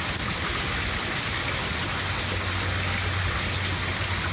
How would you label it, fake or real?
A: real